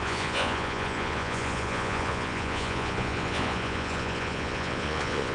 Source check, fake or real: fake